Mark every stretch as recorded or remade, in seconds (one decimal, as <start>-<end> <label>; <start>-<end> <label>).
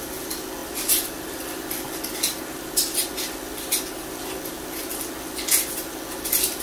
0.0-6.6 recorded